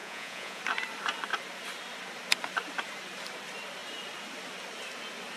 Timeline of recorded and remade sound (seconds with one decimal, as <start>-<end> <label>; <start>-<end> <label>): 0.0-0.6 remade; 0.6-5.4 recorded

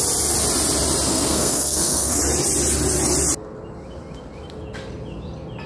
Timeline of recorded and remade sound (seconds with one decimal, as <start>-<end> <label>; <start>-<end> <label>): 0.0-1.1 recorded; 1.1-2.2 remade; 2.2-5.7 recorded